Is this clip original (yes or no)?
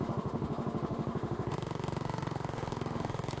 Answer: no